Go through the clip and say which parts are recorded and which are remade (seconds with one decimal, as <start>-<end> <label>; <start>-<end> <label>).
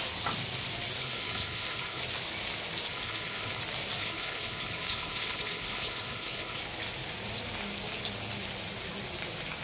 0.0-1.0 recorded; 1.0-2.0 remade; 2.0-2.9 recorded; 2.9-3.6 remade; 3.6-4.0 recorded; 4.0-6.6 remade; 6.6-9.6 recorded